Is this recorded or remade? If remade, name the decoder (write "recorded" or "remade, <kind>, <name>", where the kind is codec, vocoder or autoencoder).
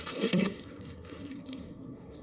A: remade, codec, SNAC